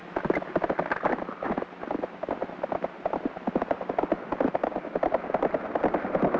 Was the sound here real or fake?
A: real